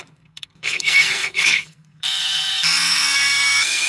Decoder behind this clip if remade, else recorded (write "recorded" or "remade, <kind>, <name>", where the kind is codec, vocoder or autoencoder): remade, codec, SNAC